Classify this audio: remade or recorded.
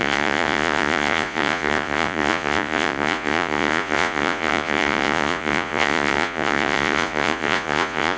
remade